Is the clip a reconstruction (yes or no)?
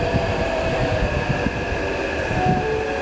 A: no